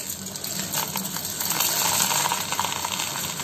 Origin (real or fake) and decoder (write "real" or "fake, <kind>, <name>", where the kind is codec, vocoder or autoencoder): real